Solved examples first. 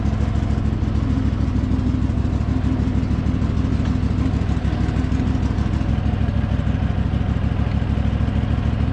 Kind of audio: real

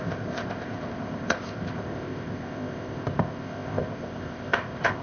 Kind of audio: fake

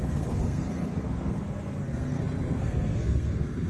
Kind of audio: fake